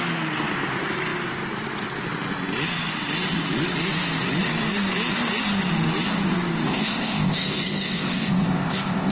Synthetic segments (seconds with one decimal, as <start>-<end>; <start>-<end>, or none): 6.7-9.1